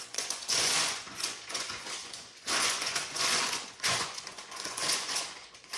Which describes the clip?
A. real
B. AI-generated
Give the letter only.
B